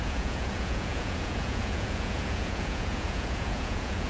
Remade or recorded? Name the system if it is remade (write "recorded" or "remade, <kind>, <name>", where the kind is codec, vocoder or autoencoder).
remade, vocoder, Vocos